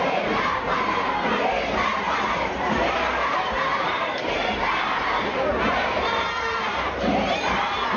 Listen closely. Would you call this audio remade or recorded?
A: remade